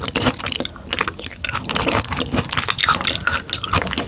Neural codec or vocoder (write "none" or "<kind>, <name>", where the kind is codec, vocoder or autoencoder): none